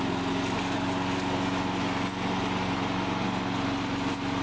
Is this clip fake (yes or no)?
no